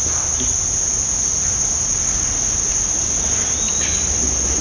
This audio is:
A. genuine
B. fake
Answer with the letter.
A